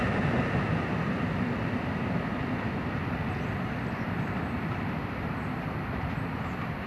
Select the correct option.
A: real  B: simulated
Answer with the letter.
A